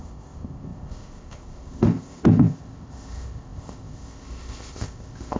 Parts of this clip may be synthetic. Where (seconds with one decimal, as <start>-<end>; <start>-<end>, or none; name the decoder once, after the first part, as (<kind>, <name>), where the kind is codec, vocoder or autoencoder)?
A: 0.0-5.4 (codec, ZipCodec)